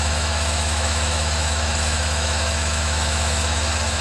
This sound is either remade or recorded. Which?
remade